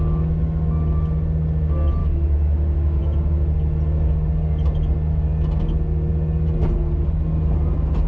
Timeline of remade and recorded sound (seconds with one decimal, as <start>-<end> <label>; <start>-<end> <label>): 0.0-2.0 recorded; 2.0-3.0 remade; 3.0-8.1 recorded